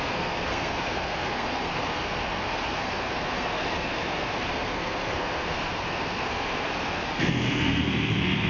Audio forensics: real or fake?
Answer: fake